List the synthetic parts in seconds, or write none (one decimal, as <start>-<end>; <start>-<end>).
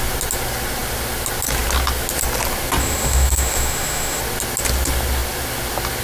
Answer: 2.8-4.2